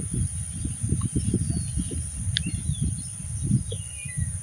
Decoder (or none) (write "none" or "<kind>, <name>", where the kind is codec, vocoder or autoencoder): none